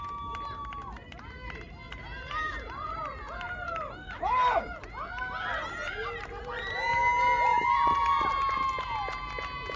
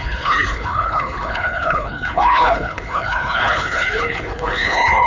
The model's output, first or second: second